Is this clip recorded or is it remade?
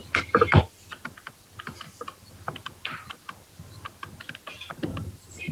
remade